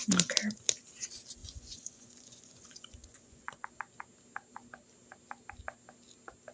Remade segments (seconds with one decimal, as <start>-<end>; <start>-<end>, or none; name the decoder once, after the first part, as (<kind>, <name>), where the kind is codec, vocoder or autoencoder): 1.4-3.7 (vocoder, Vocos)